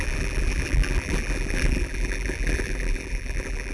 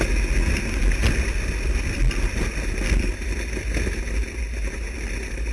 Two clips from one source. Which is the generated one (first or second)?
first